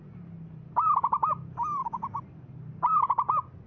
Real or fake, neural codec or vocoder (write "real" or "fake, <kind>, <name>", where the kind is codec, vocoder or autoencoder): real